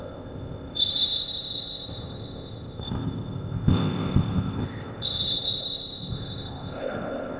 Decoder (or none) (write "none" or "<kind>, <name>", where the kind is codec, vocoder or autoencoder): codec, ZipCodec